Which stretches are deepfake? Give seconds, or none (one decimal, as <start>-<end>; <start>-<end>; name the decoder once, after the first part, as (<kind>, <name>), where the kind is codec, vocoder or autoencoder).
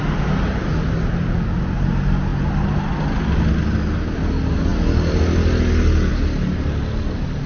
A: none